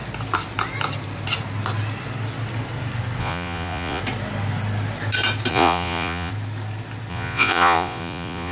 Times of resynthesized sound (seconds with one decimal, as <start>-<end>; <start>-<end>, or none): 3.2-4.0; 5.5-6.3; 7.1-8.5